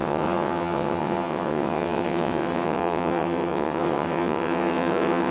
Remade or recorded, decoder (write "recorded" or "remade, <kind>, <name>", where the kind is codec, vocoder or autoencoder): remade, vocoder, WaveNeXt